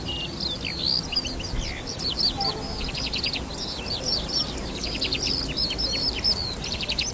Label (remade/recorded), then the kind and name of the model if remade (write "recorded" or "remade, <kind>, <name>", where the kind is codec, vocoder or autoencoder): recorded